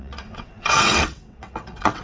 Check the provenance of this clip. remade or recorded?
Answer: remade